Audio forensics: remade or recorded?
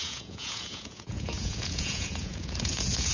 remade